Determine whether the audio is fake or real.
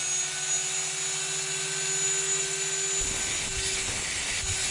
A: real